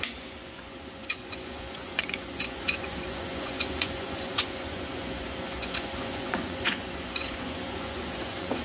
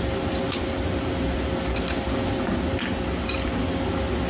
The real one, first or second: second